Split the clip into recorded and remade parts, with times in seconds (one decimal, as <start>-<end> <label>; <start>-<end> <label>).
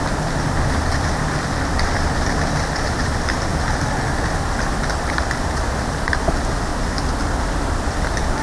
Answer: 0.0-3.5 remade; 3.5-5.1 recorded; 5.1-6.7 remade; 6.7-7.4 recorded; 7.4-8.4 remade